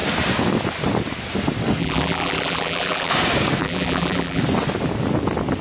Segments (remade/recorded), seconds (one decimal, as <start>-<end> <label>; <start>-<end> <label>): 0.0-1.8 recorded; 1.8-3.1 remade; 3.1-3.6 recorded; 3.6-4.4 remade; 4.4-5.6 recorded